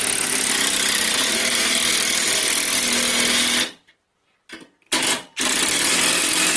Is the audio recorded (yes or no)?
yes